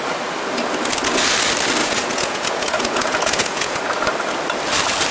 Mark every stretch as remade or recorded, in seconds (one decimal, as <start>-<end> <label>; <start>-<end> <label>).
0.0-1.8 recorded; 1.8-3.8 remade; 3.8-5.1 recorded